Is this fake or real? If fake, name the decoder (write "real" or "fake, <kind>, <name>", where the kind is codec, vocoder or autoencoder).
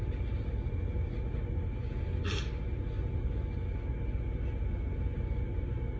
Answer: real